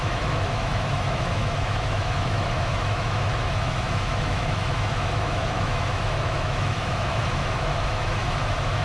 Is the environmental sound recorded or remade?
remade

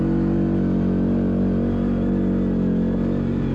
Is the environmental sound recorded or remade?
recorded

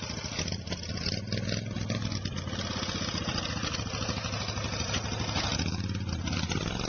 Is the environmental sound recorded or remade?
recorded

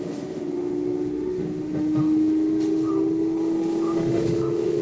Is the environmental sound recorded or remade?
remade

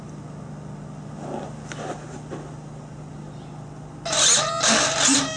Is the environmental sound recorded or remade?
recorded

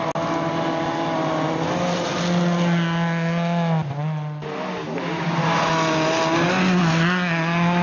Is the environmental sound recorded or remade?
recorded